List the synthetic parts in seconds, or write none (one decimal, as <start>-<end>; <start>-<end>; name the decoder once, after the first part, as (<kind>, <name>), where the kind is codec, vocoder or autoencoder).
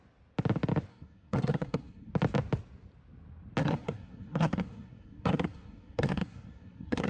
0.9-2.1 (codec, SNAC); 3.6-7.1